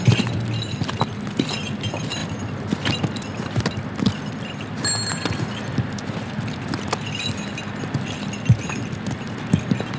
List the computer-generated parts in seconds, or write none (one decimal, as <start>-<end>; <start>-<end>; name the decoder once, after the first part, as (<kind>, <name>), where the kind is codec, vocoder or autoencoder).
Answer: none